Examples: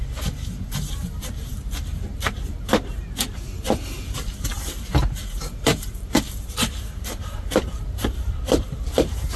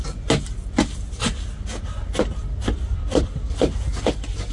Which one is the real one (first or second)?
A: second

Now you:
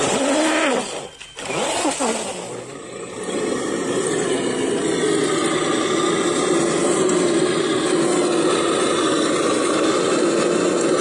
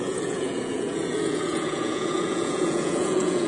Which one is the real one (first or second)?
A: first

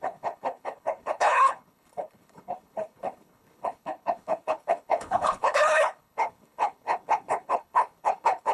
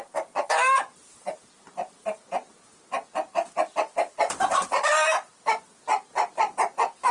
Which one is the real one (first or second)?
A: second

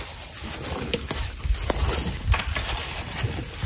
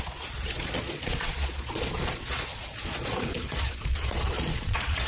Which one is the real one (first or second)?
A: first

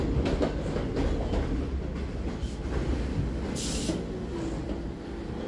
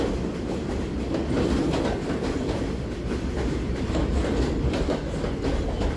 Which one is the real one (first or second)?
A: first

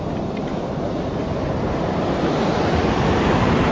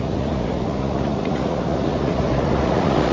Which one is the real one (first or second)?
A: first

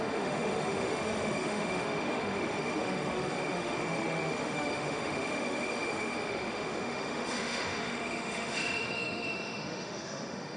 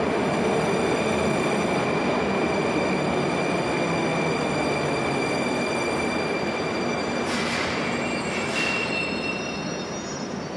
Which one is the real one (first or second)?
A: second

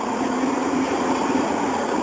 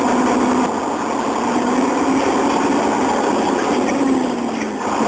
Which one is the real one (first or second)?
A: second